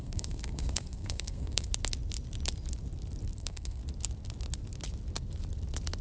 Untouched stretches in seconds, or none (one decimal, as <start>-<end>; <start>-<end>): 1.7-3.4; 3.8-6.0